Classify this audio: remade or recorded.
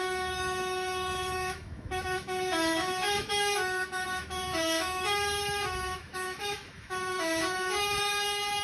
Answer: remade